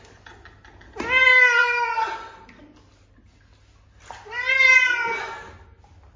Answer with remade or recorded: recorded